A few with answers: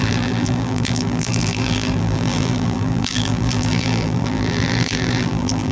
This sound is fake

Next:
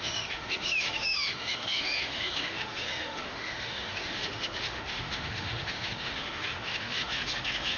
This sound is fake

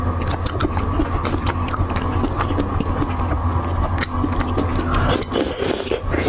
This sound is real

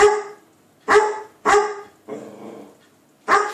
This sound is real